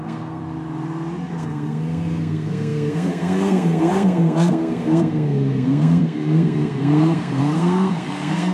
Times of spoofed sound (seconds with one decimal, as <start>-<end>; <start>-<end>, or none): 0.0-0.4; 1.3-8.5